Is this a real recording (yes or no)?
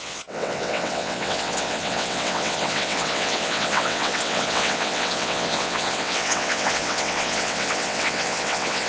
no